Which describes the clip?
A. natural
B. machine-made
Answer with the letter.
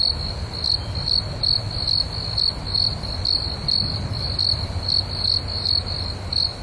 A